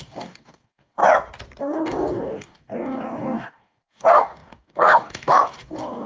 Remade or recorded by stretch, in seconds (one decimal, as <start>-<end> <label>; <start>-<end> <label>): 0.0-1.0 remade; 1.0-1.6 recorded; 1.6-6.1 remade